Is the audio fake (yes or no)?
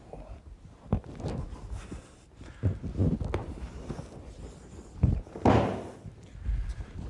no